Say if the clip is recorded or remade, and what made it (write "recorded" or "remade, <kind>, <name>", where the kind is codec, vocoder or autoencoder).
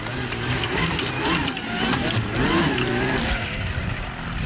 recorded